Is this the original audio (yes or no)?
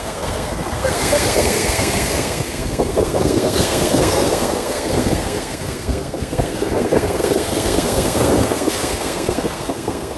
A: no